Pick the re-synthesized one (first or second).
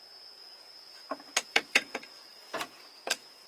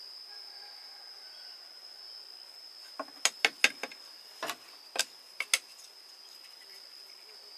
first